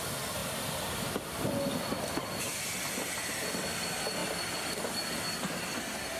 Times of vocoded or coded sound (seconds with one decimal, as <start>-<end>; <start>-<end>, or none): none